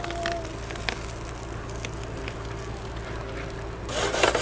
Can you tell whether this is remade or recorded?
recorded